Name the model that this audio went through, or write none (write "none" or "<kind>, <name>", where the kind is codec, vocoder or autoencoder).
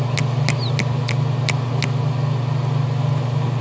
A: none